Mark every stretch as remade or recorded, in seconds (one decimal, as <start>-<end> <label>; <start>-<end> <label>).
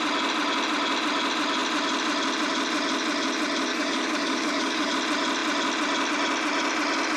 0.0-3.7 recorded; 3.7-4.9 remade; 4.9-7.2 recorded